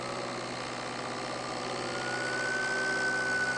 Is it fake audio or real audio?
real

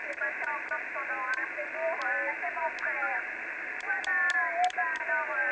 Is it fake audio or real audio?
real